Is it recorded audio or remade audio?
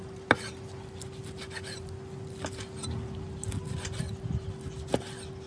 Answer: recorded